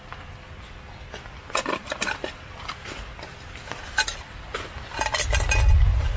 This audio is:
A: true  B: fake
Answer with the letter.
A